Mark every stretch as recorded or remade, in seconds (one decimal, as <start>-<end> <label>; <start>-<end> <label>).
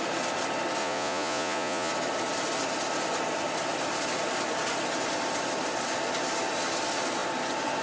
0.0-0.8 recorded; 0.8-1.9 remade; 1.9-7.8 recorded